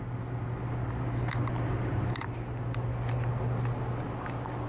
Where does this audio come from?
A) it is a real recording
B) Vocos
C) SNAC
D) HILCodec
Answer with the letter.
A